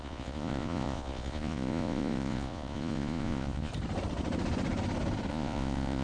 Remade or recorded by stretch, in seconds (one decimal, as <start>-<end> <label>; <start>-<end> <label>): 0.0-3.7 remade; 3.7-5.3 recorded; 5.3-6.0 remade